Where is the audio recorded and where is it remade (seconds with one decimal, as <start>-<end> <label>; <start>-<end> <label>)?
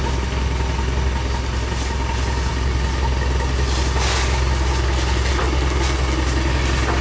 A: 0.0-7.0 recorded